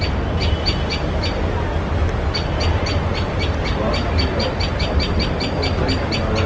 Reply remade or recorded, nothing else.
recorded